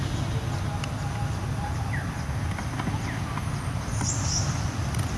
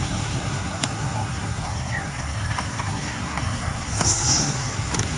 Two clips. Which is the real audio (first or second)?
first